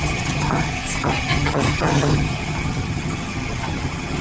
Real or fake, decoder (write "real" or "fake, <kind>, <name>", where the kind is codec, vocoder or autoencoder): fake, vocoder, HiFi-GAN